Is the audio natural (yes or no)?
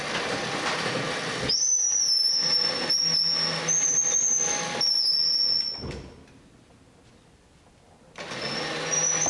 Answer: yes